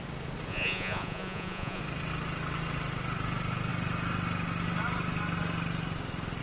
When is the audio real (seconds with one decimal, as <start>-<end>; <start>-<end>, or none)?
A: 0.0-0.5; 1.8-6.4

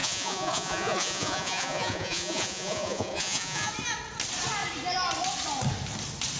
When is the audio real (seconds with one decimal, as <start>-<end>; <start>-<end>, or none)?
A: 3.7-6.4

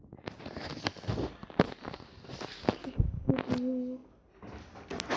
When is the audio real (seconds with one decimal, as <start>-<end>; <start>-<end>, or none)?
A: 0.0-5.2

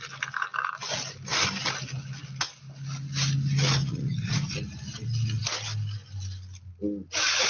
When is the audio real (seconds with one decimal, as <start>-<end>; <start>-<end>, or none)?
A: 0.0-3.8; 4.5-7.5